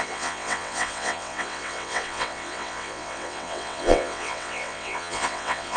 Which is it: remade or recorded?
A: remade